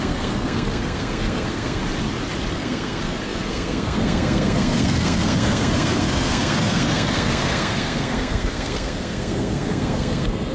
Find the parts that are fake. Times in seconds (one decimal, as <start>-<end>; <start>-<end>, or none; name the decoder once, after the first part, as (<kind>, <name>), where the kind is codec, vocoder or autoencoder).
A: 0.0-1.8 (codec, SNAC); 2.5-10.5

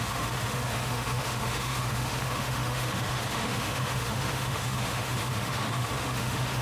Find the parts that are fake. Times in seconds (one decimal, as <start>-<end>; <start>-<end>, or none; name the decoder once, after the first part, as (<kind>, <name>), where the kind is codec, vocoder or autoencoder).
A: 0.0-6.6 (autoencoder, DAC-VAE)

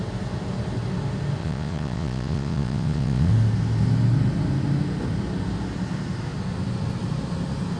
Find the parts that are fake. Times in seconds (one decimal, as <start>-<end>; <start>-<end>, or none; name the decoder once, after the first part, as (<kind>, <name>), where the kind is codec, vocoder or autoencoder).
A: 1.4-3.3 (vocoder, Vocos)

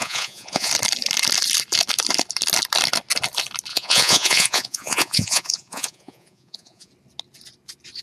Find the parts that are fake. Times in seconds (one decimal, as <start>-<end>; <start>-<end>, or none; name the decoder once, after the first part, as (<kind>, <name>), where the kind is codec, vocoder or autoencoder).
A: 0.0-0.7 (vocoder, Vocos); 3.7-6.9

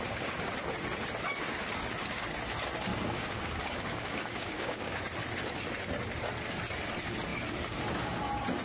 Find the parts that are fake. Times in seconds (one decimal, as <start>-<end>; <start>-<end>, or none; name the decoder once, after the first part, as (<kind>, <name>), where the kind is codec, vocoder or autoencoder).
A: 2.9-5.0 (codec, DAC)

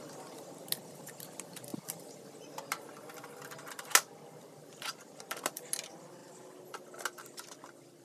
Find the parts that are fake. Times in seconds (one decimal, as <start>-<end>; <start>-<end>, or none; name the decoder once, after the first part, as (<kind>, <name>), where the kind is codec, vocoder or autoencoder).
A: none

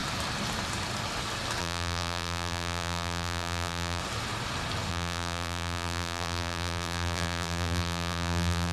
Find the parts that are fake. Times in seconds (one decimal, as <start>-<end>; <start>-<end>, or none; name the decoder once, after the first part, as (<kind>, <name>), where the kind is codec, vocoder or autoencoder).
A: 1.6-4.0 (vocoder, BigVGAN v2); 4.9-8.7